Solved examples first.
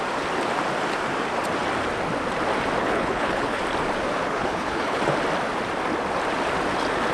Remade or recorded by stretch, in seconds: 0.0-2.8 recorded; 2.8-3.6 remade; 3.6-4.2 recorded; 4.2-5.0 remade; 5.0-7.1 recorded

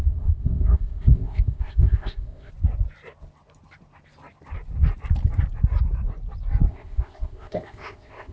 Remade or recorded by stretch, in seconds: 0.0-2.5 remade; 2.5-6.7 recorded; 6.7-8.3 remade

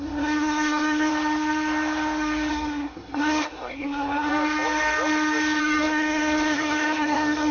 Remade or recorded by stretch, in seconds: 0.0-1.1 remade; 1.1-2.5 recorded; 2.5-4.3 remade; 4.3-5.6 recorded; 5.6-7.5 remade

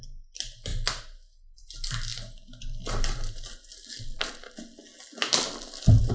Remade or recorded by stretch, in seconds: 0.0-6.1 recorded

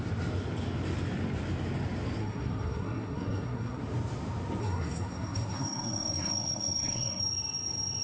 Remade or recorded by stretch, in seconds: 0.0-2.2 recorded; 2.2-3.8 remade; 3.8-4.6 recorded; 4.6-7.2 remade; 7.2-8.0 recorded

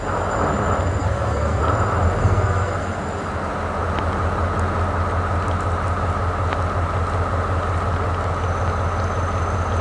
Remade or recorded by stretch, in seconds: 0.0-1.0 recorded; 1.0-1.6 remade; 1.6-2.2 recorded; 2.2-3.0 remade; 3.0-9.8 recorded

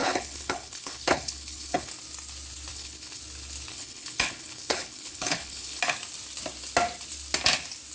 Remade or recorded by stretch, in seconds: 0.0-1.9 remade; 1.9-2.7 recorded; 2.7-3.2 remade; 3.2-3.7 recorded; 3.7-5.8 remade; 5.8-7.9 recorded

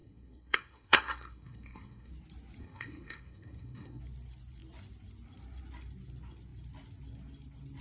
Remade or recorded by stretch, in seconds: 0.0-2.1 remade; 2.1-2.6 recorded; 2.6-4.0 remade; 4.0-7.8 recorded